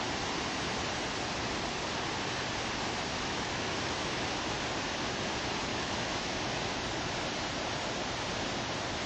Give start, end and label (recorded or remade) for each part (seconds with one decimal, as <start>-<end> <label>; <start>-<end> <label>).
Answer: 0.0-3.1 recorded; 3.1-4.3 remade; 4.3-5.7 recorded; 5.7-6.8 remade; 6.8-9.1 recorded